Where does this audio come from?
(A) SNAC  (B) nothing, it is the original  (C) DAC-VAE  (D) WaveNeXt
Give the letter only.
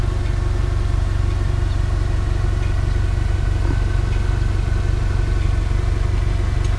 B